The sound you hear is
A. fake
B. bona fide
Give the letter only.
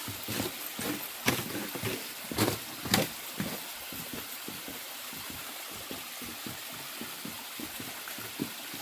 B